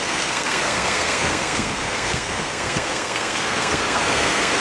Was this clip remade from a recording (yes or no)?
yes